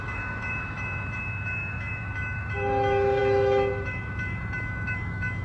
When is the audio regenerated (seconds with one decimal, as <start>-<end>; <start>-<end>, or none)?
0.0-5.4

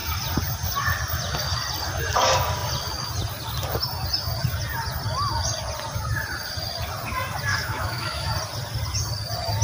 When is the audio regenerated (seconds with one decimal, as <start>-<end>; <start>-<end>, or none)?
7.5-8.3

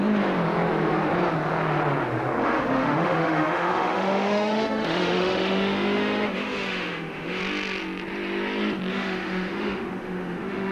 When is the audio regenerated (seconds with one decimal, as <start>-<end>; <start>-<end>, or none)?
2.4-7.4; 8.9-10.7

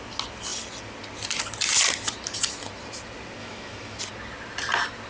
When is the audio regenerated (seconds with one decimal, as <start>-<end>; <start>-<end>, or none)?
3.4-4.0

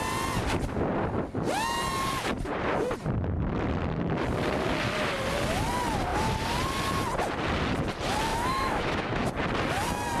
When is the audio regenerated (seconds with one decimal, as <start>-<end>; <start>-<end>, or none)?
8.3-9.3